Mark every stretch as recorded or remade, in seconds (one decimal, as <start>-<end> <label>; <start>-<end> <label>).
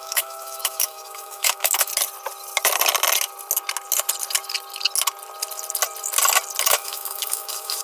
0.0-1.9 remade; 1.9-6.6 recorded; 6.6-7.8 remade